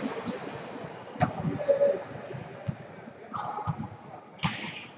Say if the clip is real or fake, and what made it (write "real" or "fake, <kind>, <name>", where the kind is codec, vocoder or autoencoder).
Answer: real